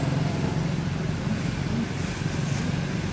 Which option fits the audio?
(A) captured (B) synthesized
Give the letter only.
A